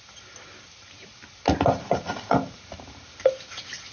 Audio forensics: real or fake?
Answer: real